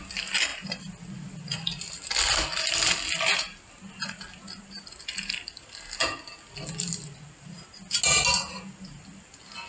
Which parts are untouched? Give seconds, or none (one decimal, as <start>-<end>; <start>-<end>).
0.0-9.7